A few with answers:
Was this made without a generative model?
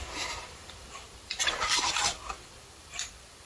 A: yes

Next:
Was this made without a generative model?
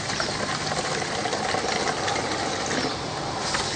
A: yes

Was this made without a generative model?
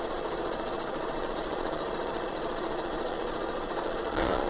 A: no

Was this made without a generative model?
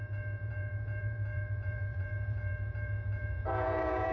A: no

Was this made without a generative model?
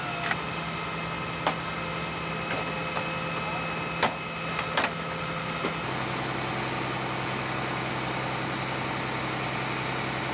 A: yes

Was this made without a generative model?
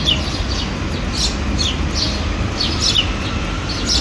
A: yes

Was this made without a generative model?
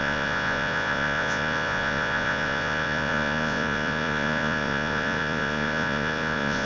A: no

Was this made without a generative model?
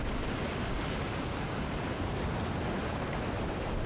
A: yes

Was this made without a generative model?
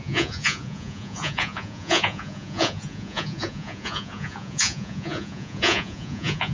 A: no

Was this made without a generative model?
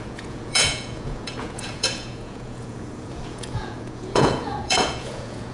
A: no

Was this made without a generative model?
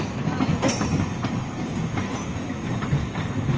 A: yes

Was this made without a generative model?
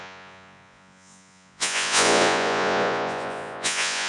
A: no